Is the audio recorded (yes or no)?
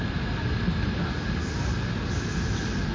yes